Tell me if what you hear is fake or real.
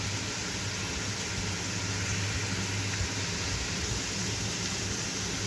real